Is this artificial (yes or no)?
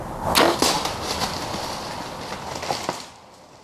no